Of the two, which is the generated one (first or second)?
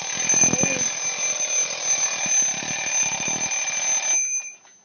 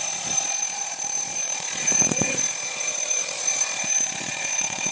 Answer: second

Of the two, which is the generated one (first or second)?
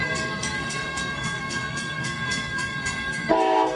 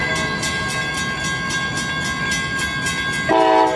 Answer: first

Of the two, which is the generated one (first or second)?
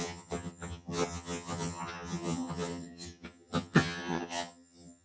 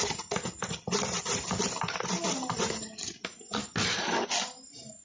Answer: first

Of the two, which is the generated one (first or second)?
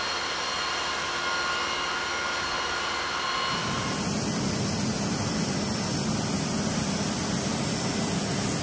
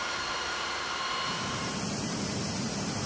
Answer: second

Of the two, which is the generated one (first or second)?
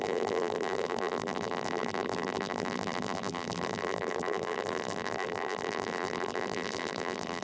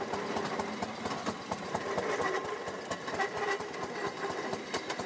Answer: first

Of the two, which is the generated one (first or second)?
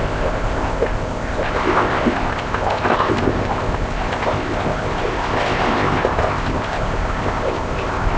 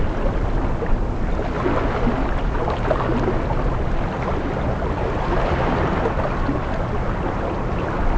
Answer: first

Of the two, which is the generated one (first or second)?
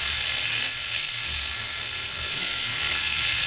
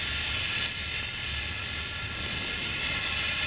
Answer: first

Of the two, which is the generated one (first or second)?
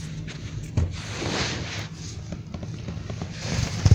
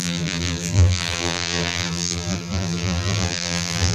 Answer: second